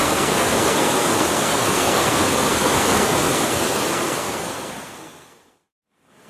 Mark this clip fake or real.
fake